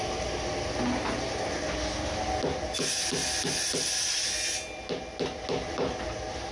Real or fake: real